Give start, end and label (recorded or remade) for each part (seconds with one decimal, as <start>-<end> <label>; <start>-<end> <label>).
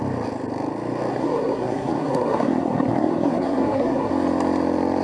0.0-1.1 recorded; 1.1-4.1 remade; 4.1-5.0 recorded